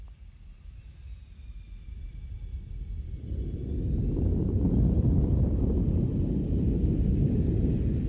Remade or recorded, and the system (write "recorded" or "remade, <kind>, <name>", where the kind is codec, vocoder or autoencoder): recorded